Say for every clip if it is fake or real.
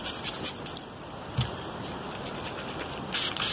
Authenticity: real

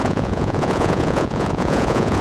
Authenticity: fake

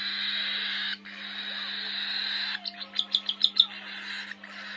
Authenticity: real